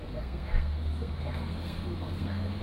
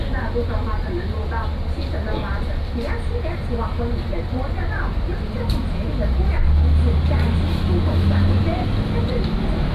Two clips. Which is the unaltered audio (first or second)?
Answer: second